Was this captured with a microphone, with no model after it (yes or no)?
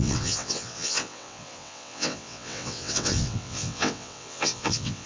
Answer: no